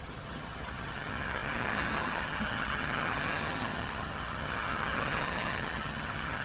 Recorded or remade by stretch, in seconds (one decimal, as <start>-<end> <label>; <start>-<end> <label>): 0.0-6.4 remade